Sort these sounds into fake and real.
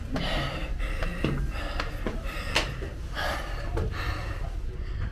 real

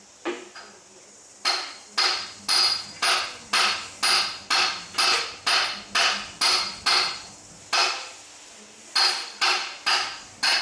real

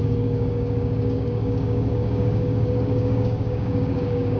fake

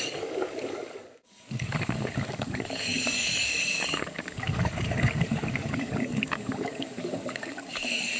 fake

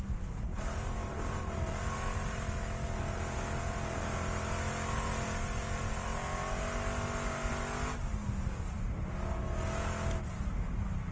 real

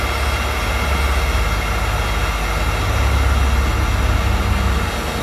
real